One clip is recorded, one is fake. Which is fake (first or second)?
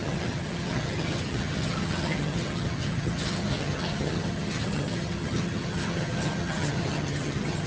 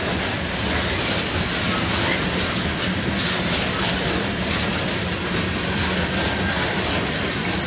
first